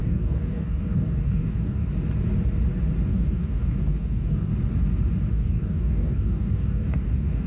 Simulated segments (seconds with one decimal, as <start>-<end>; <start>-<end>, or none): 0.0-1.9; 3.1-4.5; 5.3-7.5